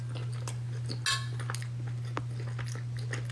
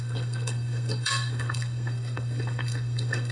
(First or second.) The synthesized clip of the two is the second